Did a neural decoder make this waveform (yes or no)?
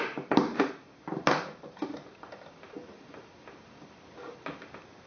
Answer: no